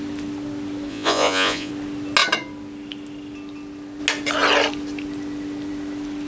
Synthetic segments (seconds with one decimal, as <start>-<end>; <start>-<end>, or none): 0.9-1.7